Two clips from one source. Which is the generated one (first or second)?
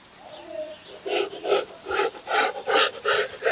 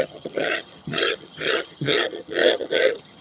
second